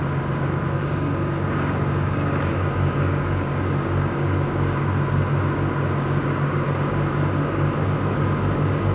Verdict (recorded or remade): remade